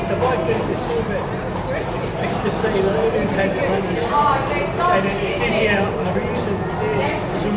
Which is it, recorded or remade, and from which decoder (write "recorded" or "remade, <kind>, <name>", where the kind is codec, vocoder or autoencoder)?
recorded